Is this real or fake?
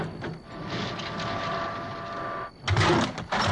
real